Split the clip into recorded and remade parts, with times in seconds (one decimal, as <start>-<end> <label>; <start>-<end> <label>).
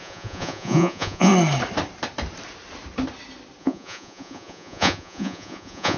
0.0-1.3 remade; 1.3-3.6 recorded; 3.6-6.0 remade